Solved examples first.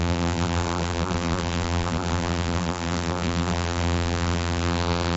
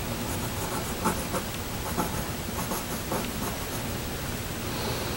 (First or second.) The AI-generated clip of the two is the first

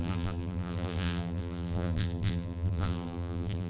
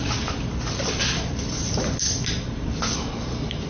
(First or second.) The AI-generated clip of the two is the first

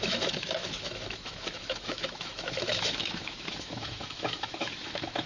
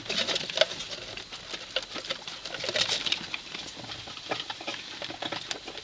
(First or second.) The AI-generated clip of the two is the first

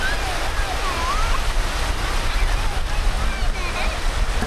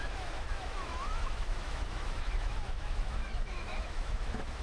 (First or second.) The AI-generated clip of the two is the second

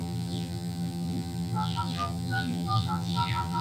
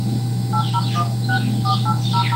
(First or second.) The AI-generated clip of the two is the first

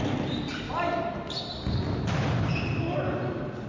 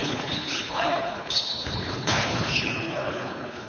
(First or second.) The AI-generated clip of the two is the second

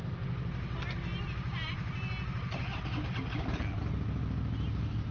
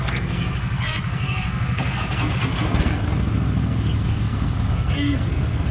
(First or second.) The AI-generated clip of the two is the second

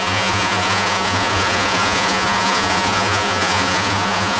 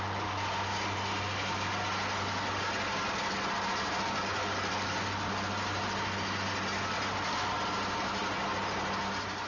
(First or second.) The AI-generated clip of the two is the first